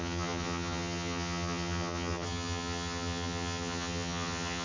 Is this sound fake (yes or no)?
yes